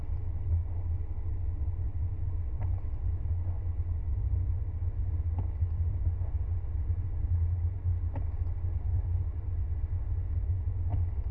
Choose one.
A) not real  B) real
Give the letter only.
B